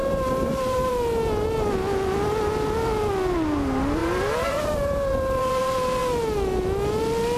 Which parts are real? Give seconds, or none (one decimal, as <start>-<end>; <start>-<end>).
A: 0.9-4.0; 5.6-7.4